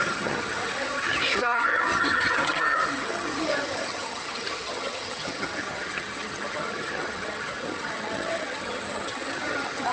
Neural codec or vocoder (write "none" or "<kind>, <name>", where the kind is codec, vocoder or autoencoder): vocoder, HiFi-GAN